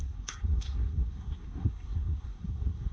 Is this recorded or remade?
remade